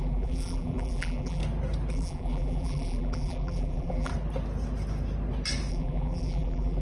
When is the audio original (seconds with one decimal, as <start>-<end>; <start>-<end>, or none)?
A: 1.4-1.9; 4.1-5.7